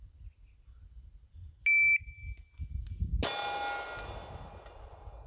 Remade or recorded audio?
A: recorded